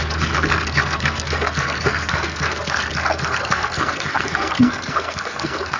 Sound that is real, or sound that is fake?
fake